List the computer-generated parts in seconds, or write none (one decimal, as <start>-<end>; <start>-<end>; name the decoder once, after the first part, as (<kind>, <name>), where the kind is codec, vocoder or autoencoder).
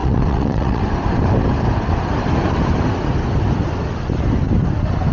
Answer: 0.0-0.8 (vocoder, WaveNeXt)